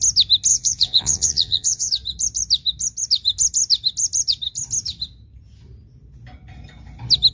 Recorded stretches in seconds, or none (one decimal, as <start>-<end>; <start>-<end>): 0.0-0.5; 1.9-7.3